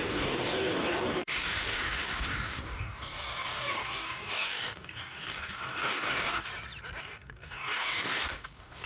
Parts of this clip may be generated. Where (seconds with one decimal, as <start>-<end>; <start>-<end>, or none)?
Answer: 0.0-6.5; 7.0-8.9